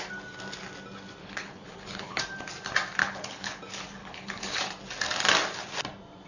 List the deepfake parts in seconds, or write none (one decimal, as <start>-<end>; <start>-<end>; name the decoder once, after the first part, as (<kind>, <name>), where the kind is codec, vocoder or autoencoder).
1.2-2.2 (codec, HILCodec); 3.0-3.6; 4.0-4.7